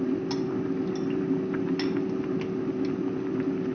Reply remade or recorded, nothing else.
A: recorded